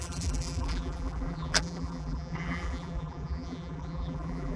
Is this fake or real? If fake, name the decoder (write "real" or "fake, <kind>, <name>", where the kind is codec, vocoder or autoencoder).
fake, vocoder, BigVGAN v2